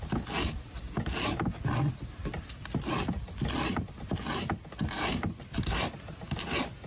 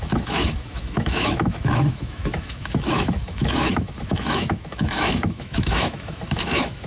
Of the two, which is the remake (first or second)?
second